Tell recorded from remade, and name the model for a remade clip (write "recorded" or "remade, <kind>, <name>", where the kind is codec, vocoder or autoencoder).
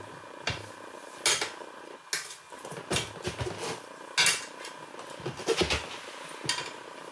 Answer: recorded